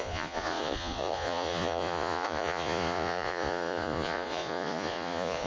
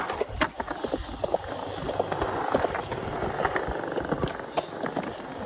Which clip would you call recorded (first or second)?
second